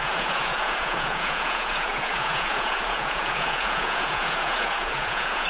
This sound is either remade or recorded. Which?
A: remade